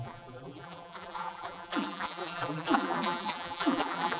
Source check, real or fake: fake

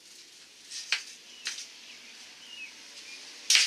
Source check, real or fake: real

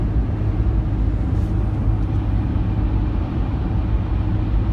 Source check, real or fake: real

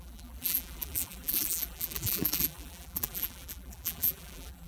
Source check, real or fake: fake